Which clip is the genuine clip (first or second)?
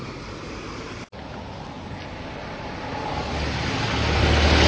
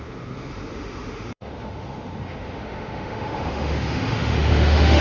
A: first